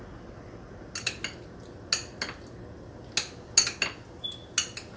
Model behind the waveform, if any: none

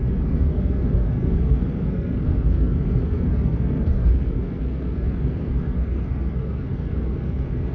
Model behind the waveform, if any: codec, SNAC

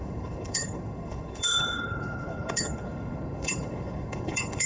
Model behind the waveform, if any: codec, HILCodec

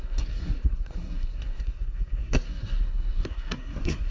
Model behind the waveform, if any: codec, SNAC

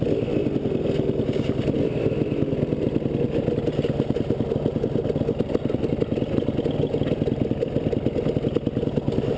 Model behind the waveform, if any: none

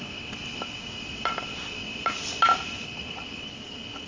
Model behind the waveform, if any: none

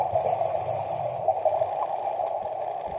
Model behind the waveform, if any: none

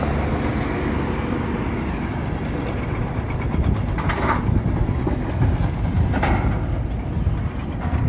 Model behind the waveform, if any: none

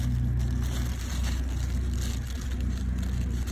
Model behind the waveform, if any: none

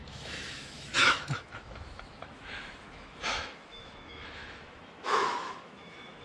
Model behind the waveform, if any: autoencoder, DAC-VAE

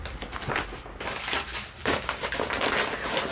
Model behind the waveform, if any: none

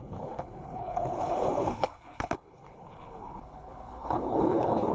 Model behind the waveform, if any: codec, HILCodec